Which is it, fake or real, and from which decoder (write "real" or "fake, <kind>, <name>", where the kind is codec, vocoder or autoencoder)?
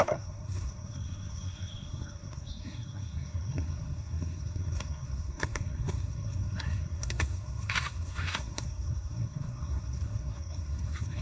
fake, codec, SNAC